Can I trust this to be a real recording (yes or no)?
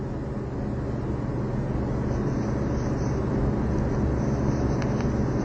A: yes